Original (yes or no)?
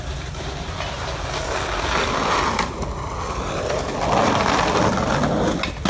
yes